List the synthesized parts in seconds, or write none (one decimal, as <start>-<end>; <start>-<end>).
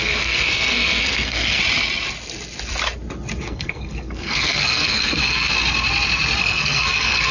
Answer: 0.0-1.6; 3.4-5.5; 6.4-7.3